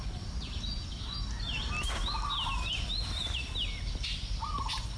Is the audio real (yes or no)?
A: yes